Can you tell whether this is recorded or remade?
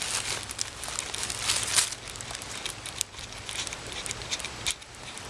remade